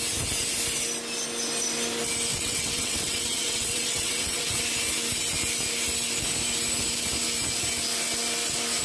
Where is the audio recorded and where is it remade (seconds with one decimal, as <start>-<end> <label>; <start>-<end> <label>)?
0.0-2.3 recorded; 2.3-4.6 remade; 4.6-8.8 recorded